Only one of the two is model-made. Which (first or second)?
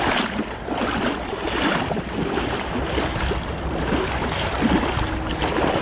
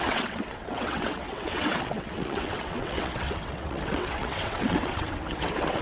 second